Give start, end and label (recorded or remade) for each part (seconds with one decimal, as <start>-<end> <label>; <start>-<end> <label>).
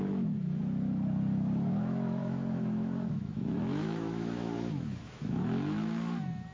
0.0-0.6 remade; 0.6-1.7 recorded; 1.7-6.5 remade